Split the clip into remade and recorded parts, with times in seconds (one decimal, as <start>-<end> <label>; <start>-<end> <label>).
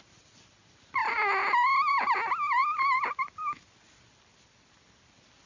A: 0.0-5.5 recorded